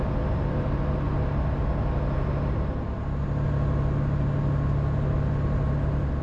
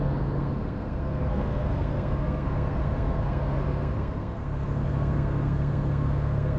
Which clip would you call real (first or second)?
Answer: first